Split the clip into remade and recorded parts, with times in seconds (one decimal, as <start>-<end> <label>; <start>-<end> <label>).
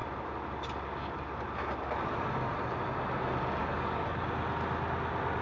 0.0-3.6 recorded; 3.6-4.2 remade; 4.2-5.4 recorded